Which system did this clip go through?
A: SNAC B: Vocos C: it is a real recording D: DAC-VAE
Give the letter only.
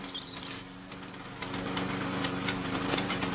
C